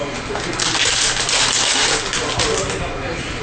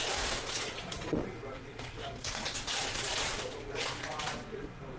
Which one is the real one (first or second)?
first